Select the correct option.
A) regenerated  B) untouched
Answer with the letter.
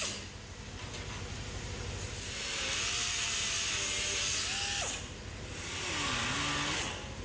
B